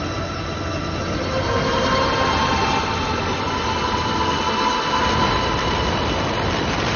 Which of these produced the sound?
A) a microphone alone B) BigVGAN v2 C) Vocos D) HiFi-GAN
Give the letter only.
A